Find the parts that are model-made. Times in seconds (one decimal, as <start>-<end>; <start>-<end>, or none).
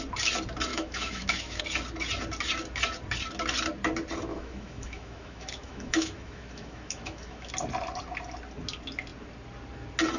0.7-1.6; 4.3-7.5